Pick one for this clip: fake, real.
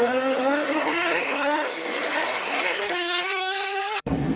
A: fake